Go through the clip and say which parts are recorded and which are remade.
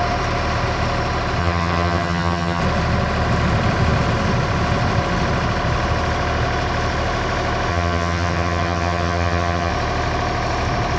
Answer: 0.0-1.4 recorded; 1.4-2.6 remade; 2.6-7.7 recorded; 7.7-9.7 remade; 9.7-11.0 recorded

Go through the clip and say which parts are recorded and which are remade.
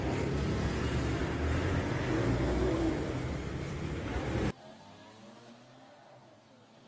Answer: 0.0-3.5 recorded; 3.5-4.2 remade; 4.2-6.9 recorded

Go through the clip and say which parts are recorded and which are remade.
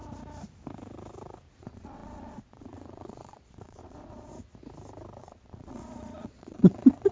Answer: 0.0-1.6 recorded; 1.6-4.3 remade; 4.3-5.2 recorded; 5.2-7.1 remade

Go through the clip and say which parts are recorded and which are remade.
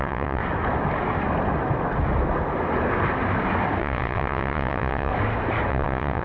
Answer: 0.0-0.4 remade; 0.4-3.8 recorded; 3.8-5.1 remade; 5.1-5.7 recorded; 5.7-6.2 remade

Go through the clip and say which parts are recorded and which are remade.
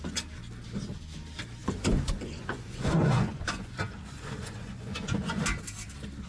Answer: 0.0-1.6 recorded; 1.6-5.4 remade; 5.4-6.3 recorded